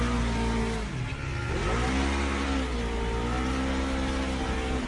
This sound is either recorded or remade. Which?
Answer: recorded